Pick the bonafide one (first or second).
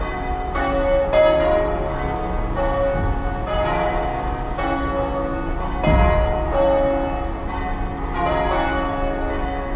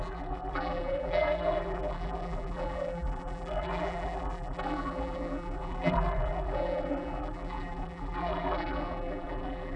first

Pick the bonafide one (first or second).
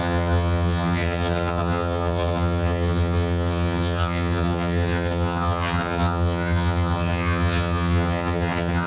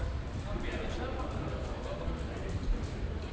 second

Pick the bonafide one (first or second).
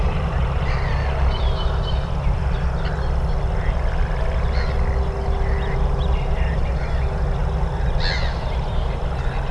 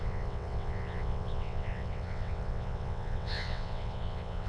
first